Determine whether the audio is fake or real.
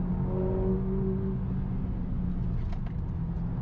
real